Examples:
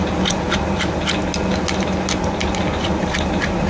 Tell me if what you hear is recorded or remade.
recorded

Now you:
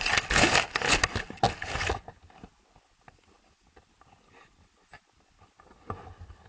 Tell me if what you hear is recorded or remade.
recorded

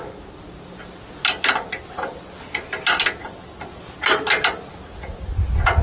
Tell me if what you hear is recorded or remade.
recorded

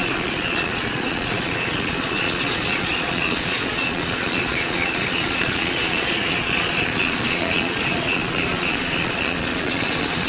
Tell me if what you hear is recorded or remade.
remade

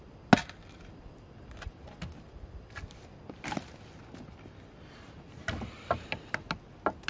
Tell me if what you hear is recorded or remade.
recorded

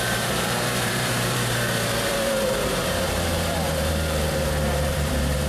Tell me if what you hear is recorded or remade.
remade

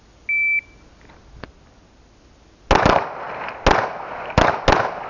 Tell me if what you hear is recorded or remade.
recorded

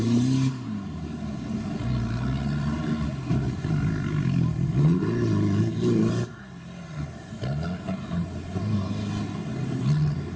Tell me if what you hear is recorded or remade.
recorded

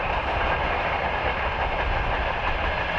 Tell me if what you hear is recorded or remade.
remade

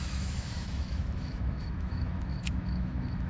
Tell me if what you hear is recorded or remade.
remade